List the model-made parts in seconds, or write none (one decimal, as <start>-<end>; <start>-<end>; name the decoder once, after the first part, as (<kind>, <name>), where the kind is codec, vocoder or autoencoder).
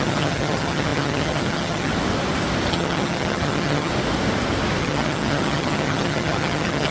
0.0-1.9 (vocoder, HiFi-GAN); 2.7-3.9; 4.8-6.9